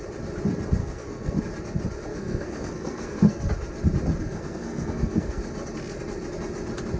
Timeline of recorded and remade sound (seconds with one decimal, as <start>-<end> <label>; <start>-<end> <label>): 0.0-0.8 recorded; 0.8-1.4 remade; 1.4-2.1 recorded; 2.1-3.5 remade; 3.5-4.2 recorded; 4.2-5.4 remade; 5.4-7.0 recorded